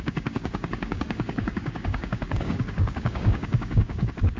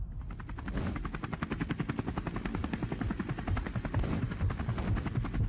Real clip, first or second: second